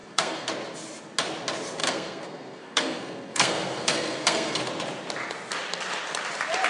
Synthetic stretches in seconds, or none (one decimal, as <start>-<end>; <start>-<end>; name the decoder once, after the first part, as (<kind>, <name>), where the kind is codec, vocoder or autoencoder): 0.0-0.5 (codec, SNAC); 1.8-4.6